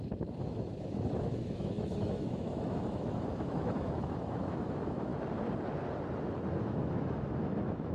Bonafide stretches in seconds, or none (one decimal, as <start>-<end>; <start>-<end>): 5.1-6.6